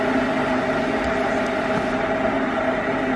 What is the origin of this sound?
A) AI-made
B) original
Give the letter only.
B